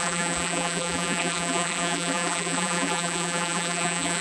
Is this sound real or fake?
fake